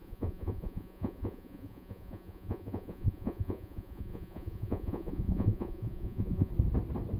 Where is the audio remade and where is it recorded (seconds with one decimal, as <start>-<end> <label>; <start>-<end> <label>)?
0.0-6.5 remade; 6.5-7.2 recorded